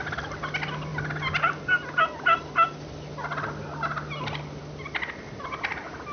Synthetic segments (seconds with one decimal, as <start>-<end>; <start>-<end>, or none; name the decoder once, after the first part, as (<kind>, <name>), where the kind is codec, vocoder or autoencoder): none